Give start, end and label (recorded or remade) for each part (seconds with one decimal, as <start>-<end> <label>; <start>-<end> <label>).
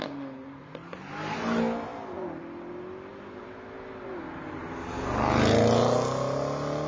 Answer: 0.0-6.9 recorded